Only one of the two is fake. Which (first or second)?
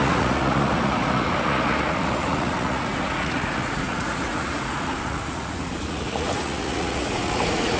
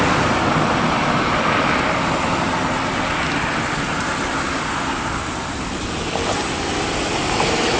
first